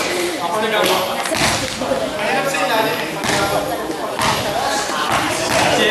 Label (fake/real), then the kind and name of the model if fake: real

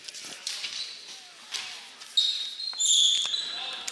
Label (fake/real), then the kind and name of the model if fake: real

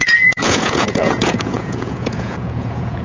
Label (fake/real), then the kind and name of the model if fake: fake, vocoder, Vocos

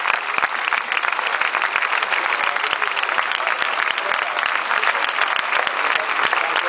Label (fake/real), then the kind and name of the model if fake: real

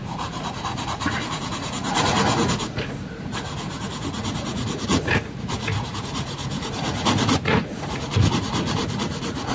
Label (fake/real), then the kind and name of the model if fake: fake, vocoder, Vocos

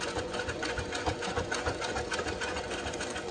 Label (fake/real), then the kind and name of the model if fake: fake, vocoder, Vocos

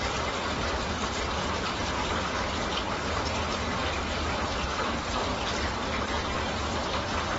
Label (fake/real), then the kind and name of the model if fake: real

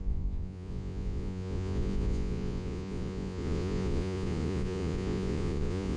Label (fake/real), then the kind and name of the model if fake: fake, vocoder, Vocos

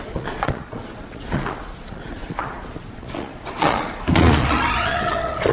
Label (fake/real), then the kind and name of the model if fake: fake, vocoder, Vocos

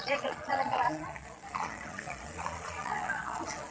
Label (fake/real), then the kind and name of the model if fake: fake, vocoder, Vocos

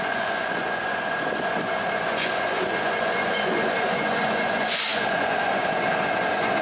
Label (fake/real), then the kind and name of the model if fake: fake, vocoder, Vocos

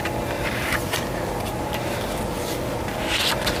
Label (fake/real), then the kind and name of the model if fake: real